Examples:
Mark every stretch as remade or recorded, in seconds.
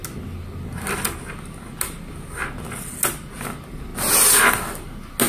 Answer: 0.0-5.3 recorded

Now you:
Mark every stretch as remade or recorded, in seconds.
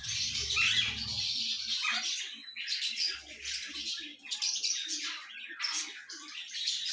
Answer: 0.0-6.9 recorded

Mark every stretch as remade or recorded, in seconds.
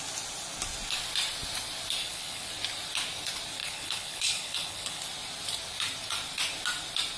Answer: 0.0-2.0 recorded; 2.0-2.5 remade; 2.5-3.6 recorded; 3.6-5.0 remade; 5.0-7.2 recorded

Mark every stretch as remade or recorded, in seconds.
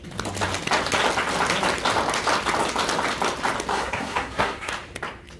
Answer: 0.0-3.7 recorded; 3.7-4.7 remade; 4.7-5.4 recorded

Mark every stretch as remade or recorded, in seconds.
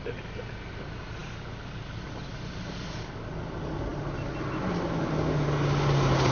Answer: 0.0-6.3 recorded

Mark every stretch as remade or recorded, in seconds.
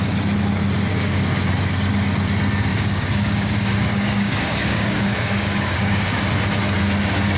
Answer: 0.0-0.9 recorded; 0.9-1.5 remade; 1.5-2.7 recorded; 2.7-6.2 remade; 6.2-7.4 recorded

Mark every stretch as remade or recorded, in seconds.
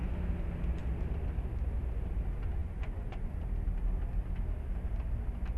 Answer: 0.0-2.6 recorded; 2.6-3.3 remade; 3.3-5.6 recorded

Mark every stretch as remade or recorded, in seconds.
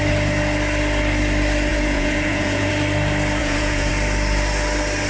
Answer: 0.0-1.7 recorded; 1.7-2.7 remade; 2.7-3.4 recorded; 3.4-3.9 remade; 3.9-5.1 recorded